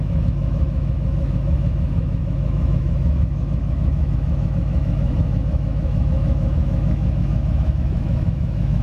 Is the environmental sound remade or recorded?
remade